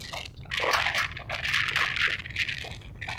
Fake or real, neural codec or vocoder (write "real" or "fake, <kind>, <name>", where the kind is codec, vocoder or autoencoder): real